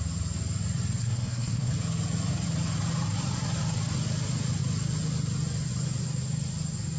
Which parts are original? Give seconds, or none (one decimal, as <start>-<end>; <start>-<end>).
0.0-1.0; 1.7-7.0